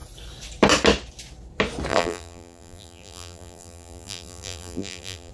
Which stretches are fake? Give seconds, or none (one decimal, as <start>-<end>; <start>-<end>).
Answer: 1.9-5.3